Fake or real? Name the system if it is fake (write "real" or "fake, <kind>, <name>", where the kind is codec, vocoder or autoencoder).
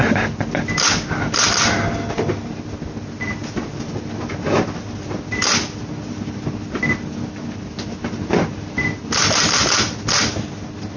real